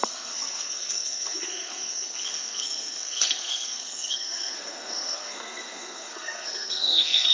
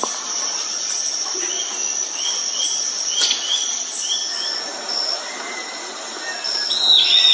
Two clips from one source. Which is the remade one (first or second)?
first